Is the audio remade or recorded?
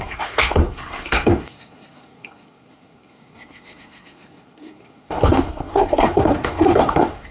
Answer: remade